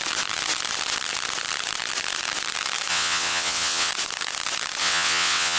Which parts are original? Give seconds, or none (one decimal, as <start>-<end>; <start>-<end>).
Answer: 0.0-2.9; 3.9-4.8